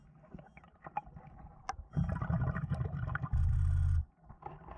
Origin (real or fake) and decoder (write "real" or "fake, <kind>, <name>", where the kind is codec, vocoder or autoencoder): real